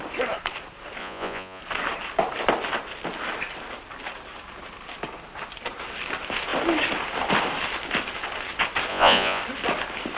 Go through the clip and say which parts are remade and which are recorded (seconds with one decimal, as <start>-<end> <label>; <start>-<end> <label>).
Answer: 0.0-1.0 recorded; 1.0-1.6 remade; 1.6-8.9 recorded; 8.9-9.4 remade; 9.4-10.2 recorded